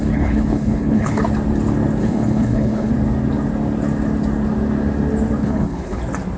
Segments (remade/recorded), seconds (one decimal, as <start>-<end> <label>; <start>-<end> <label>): 0.0-1.2 remade; 1.2-2.0 recorded; 2.0-2.9 remade; 2.9-5.4 recorded; 5.4-6.0 remade; 6.0-6.4 recorded